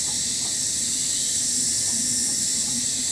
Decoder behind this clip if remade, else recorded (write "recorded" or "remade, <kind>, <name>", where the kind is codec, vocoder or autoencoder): remade, vocoder, BigVGAN v2